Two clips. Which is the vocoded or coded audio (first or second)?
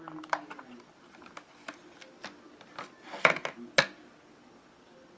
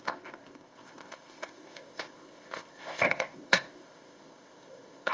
second